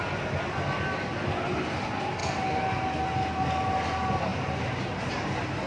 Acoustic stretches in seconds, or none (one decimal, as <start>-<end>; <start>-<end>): 0.0-5.7